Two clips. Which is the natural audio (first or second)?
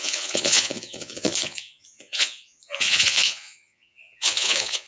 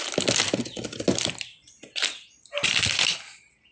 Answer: second